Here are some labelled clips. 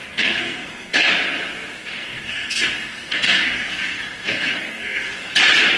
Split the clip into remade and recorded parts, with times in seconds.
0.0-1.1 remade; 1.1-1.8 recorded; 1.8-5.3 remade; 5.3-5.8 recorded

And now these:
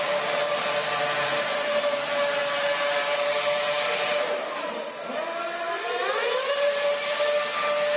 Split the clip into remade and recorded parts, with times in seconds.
0.0-8.0 recorded

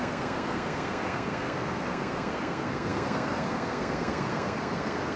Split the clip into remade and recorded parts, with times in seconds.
0.0-5.2 remade

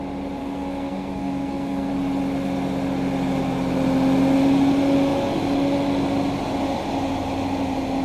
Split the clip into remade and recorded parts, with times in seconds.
0.0-0.4 recorded; 0.4-1.9 remade; 1.9-8.0 recorded

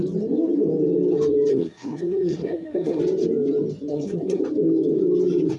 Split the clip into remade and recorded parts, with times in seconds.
0.0-1.5 recorded; 1.5-3.0 remade; 3.0-3.9 recorded; 3.9-4.4 remade; 4.4-5.6 recorded

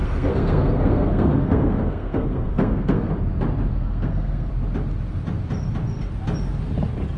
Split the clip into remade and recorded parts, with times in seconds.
0.0-3.1 remade; 3.1-3.7 recorded; 3.7-4.5 remade; 4.5-7.2 recorded